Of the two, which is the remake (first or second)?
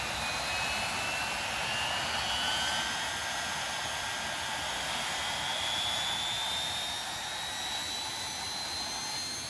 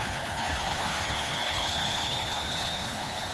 second